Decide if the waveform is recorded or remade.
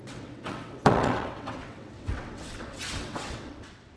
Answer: remade